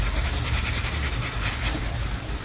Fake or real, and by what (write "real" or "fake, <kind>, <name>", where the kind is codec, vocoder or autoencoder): real